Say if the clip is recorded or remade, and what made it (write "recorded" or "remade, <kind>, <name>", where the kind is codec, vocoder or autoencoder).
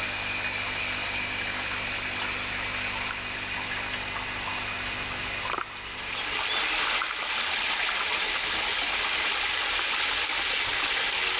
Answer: recorded